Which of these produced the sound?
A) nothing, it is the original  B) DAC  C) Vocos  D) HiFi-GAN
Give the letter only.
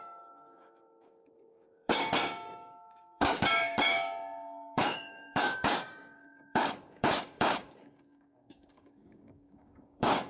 B